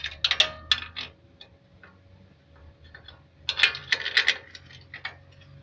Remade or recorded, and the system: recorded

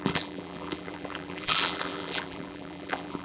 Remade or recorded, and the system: remade, vocoder, BigVGAN v2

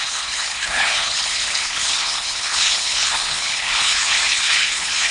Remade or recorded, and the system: remade, codec, HILCodec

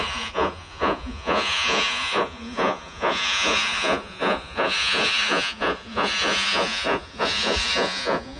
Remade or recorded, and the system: remade, vocoder, Vocos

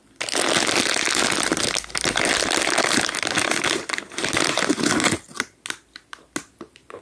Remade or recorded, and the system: recorded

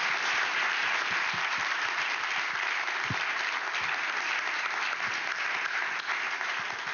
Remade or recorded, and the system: recorded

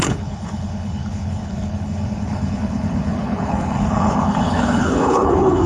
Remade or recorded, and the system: remade, codec, HILCodec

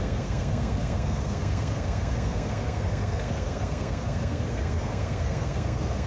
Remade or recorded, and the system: remade, codec, SNAC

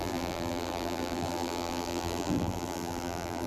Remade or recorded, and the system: remade, vocoder, BigVGAN v2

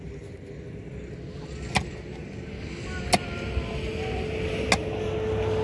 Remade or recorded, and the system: recorded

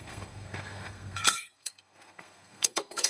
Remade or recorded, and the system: remade, codec, SNAC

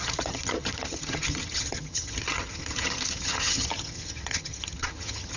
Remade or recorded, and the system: remade, vocoder, HiFi-GAN